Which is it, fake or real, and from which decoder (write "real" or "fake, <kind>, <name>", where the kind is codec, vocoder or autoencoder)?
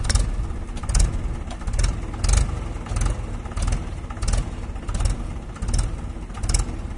real